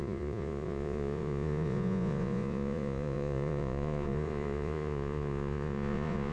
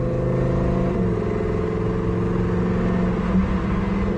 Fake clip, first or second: first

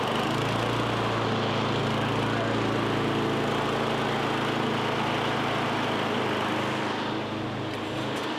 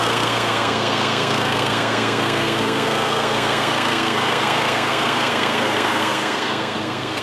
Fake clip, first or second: second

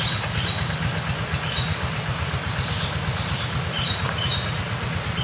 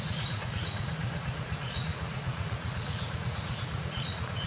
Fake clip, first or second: second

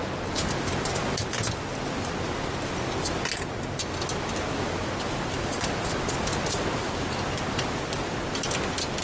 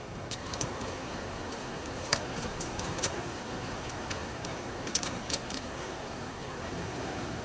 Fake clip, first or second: second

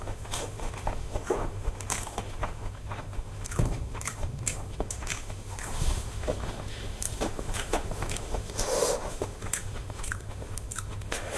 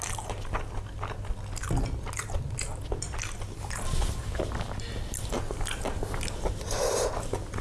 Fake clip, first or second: first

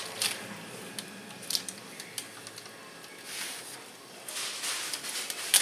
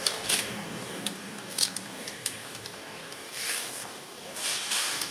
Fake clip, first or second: second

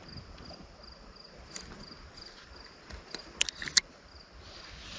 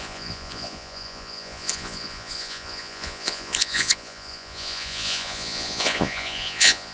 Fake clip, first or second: second